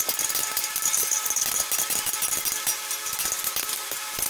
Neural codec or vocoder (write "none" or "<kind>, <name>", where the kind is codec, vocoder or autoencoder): none